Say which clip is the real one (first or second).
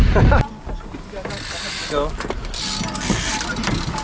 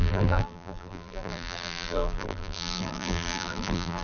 first